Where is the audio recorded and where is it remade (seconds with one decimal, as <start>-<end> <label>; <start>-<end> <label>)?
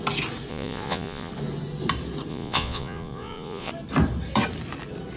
0.0-0.5 recorded; 0.5-1.3 remade; 1.3-2.3 recorded; 2.3-3.7 remade; 3.7-5.2 recorded